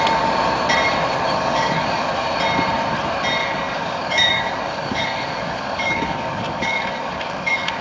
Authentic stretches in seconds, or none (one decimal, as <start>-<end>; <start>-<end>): 0.0-1.3; 2.1-3.4